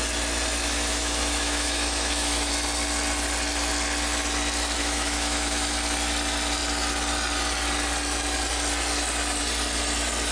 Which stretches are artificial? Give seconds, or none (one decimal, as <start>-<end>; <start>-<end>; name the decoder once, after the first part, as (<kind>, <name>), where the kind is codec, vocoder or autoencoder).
0.6-2.5 (autoencoder, DAC-VAE); 4.8-5.7